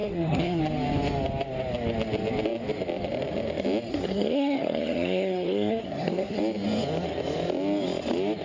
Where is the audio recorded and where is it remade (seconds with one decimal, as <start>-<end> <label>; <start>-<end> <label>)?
0.0-0.6 remade; 0.6-3.9 recorded; 3.9-6.4 remade; 6.4-8.4 recorded